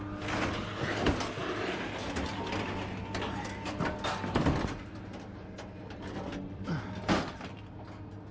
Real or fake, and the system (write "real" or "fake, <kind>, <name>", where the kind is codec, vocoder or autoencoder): real